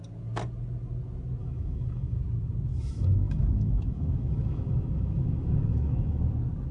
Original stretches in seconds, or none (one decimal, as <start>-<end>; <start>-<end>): 0.0-1.4; 2.2-2.7; 6.2-6.7